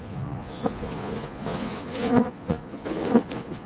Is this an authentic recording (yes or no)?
no